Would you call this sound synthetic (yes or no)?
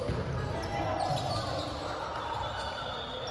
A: no